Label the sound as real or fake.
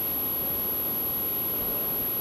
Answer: real